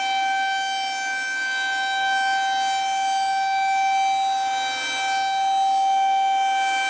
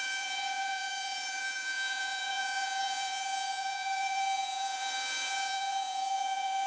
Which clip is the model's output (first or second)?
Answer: second